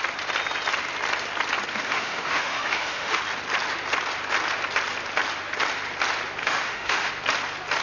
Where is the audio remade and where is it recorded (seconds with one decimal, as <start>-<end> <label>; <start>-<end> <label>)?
0.0-1.7 recorded; 1.7-3.2 remade; 3.2-6.4 recorded; 6.4-7.1 remade; 7.1-7.8 recorded